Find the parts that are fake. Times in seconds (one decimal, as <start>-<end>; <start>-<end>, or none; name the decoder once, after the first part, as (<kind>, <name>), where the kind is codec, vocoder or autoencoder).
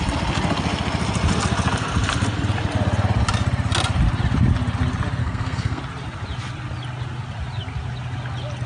5.2-5.8 (codec, SNAC)